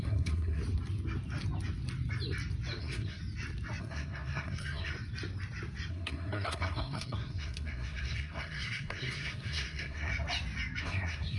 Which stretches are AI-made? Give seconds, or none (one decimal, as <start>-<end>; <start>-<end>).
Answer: 0.0-0.6; 2.8-3.2; 3.8-4.9; 5.9-10.1; 10.8-11.4